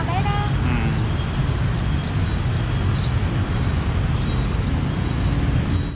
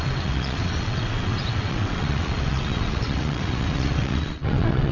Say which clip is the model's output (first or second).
second